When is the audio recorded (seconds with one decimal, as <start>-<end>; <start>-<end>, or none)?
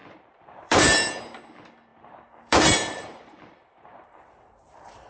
1.2-1.9